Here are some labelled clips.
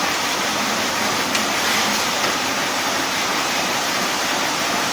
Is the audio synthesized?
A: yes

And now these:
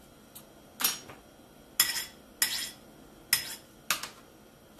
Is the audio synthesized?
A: no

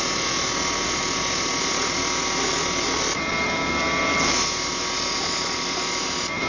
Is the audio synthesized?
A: no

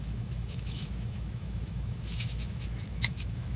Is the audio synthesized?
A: yes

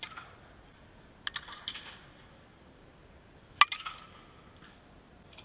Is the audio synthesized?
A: no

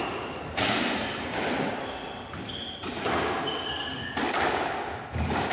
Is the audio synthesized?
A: no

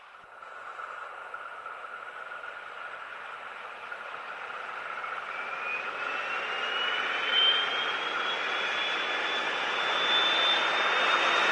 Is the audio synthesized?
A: no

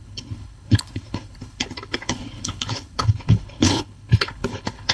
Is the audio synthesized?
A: yes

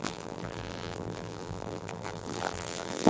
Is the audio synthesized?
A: yes